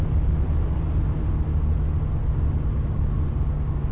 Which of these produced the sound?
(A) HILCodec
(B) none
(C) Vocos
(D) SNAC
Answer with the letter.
B